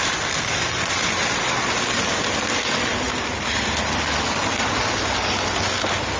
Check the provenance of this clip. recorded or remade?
recorded